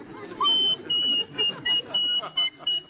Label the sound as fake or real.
real